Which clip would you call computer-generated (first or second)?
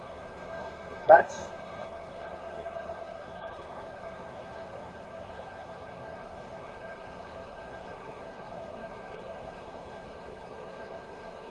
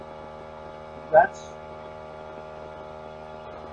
first